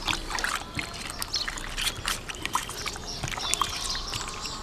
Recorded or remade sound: recorded